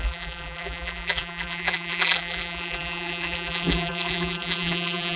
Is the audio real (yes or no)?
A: no